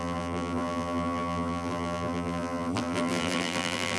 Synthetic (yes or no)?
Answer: yes